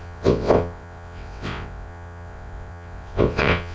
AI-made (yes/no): yes